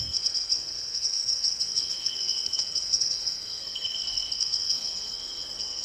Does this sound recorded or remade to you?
remade